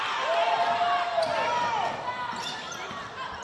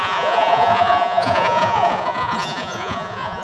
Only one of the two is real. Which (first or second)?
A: first